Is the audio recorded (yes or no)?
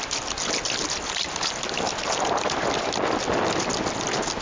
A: yes